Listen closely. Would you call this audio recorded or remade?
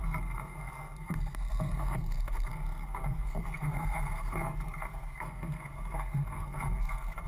remade